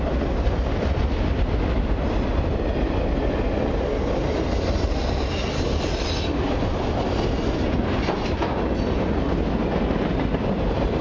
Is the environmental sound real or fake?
real